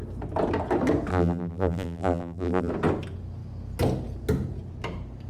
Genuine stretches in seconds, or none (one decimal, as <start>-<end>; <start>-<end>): 0.0-1.1; 2.7-5.3